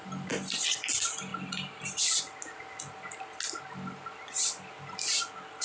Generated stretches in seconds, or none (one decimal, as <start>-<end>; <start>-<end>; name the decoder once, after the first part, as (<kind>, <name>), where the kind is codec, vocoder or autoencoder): none